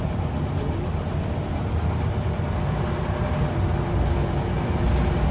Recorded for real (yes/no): yes